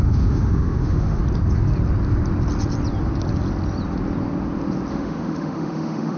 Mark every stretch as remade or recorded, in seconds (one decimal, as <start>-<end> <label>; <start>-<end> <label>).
0.0-1.2 remade; 1.2-4.9 recorded; 4.9-6.2 remade